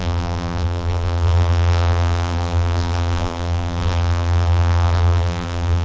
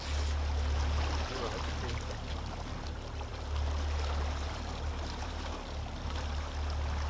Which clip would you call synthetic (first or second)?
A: first